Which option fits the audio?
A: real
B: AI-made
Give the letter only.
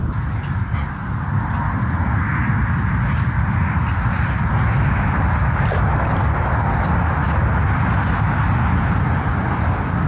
A